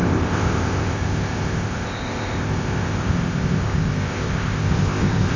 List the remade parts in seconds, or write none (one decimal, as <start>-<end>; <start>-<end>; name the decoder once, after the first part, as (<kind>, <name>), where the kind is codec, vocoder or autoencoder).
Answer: 0.0-5.4 (codec, ZipCodec)